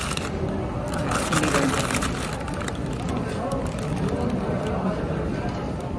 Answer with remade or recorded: recorded